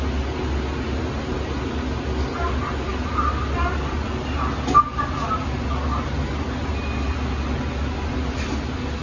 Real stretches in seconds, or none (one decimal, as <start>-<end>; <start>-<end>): 0.0-9.0